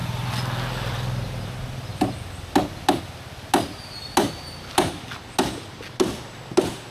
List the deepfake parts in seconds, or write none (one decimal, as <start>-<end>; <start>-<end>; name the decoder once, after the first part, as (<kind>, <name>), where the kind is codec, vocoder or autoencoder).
none